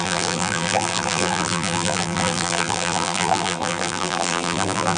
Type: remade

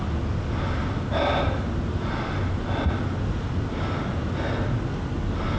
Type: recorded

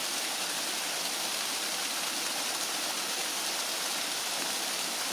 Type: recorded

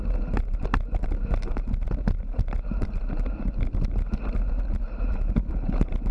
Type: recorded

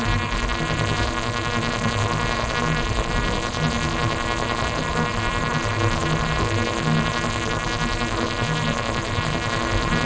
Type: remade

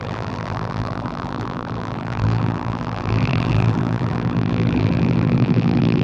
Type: remade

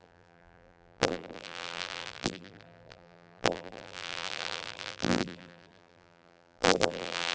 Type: remade